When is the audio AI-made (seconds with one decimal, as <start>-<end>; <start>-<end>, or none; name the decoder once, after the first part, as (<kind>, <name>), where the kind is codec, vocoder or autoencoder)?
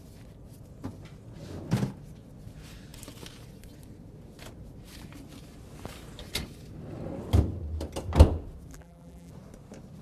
8.7-9.3 (vocoder, BigVGAN v2)